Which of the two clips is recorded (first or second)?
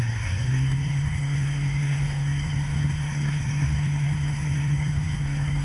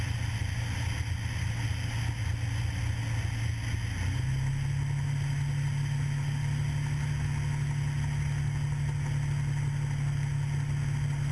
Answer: second